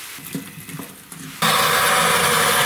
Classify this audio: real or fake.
real